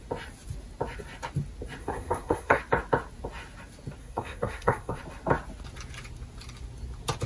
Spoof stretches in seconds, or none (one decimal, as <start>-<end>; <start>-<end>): 1.8-2.6; 4.0-5.0